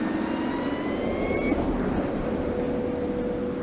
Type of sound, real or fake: real